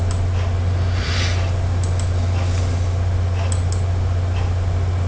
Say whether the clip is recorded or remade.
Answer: recorded